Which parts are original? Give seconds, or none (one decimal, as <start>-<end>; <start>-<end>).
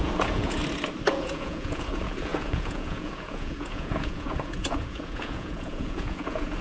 0.6-1.1